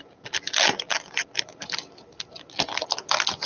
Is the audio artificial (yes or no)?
no